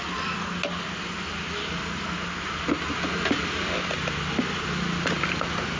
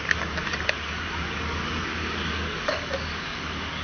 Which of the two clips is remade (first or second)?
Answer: second